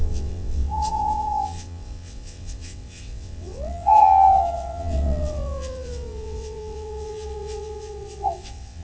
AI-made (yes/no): yes